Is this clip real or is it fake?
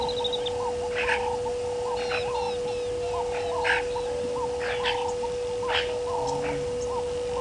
real